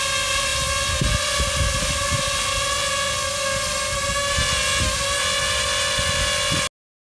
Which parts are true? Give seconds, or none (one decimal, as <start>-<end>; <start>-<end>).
0.0-7.2